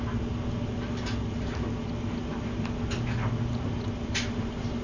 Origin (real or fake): real